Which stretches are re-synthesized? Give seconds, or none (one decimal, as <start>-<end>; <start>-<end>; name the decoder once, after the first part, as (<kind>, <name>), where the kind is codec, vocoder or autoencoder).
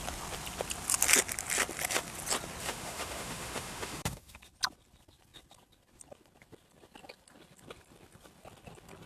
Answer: 2.6-4.4 (autoencoder, DAC-VAE)